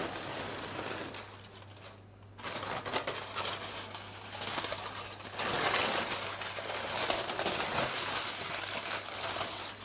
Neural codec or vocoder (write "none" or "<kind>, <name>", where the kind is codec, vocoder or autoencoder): none